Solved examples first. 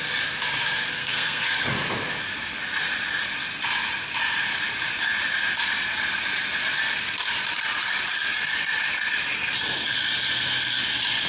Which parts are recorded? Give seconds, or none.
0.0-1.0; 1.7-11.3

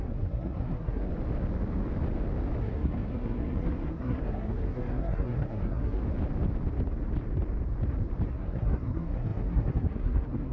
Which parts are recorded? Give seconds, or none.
1.1-2.6; 6.0-8.3

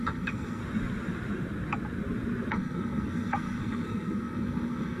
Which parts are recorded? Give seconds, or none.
0.6-2.5

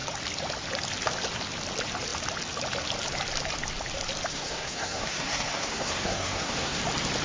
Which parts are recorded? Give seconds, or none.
0.0-4.3; 6.8-7.2

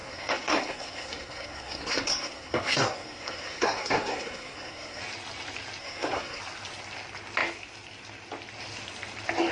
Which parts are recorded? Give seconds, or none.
5.0-5.8; 6.4-9.5